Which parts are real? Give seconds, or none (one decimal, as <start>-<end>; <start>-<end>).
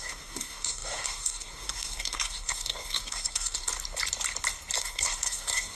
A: 3.7-4.8